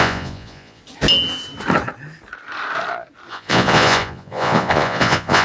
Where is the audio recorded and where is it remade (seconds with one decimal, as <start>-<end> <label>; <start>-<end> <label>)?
0.0-0.8 remade; 0.8-3.3 recorded; 3.3-5.4 remade